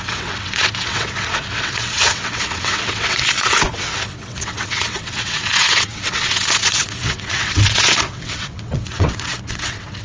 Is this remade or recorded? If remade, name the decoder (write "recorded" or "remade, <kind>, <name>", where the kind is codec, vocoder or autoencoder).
remade, vocoder, WaveNeXt